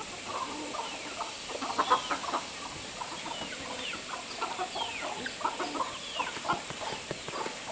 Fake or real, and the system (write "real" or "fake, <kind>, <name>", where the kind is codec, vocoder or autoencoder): real